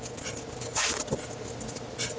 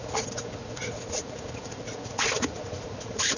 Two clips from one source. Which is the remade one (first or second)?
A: second